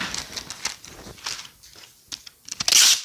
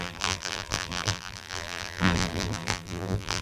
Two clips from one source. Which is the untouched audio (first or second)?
first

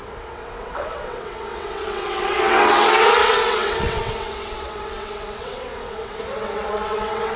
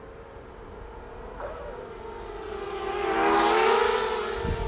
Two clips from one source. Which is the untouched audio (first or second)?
second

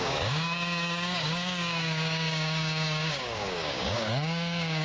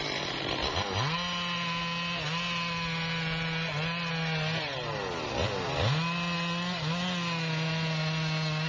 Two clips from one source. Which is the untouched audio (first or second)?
second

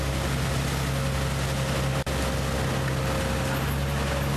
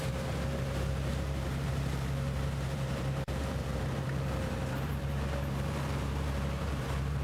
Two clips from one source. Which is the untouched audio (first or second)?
first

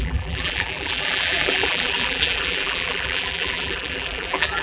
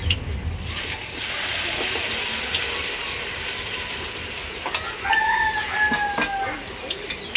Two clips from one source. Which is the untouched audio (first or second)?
second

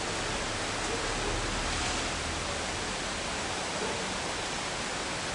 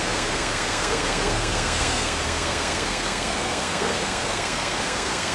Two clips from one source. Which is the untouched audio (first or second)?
first